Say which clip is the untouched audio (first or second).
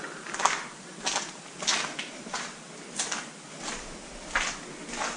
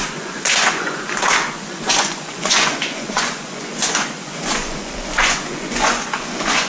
first